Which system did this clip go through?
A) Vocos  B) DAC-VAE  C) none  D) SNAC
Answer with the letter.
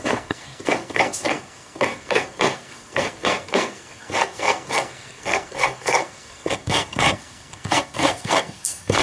D